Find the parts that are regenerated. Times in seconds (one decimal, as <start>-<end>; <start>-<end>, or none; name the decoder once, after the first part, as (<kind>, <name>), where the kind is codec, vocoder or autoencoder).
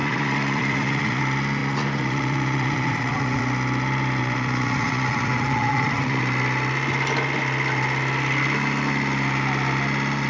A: 0.0-1.2 (vocoder, Vocos); 1.6-3.4; 4.2-6.2